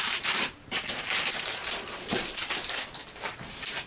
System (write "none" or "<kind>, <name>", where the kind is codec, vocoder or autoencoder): vocoder, BigVGAN v2